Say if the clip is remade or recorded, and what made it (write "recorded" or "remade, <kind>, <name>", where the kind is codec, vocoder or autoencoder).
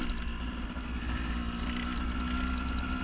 recorded